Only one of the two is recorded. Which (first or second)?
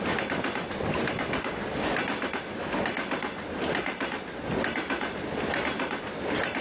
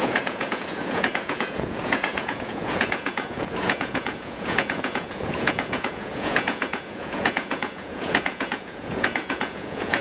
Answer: first